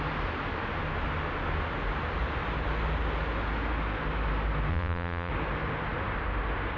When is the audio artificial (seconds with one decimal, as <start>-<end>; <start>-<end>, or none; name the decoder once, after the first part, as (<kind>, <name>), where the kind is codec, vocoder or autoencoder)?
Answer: 4.7-5.3 (vocoder, Vocos)